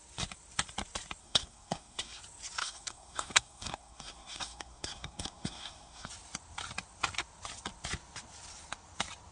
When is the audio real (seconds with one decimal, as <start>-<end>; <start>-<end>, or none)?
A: 0.0-1.2; 2.2-2.6; 6.1-9.3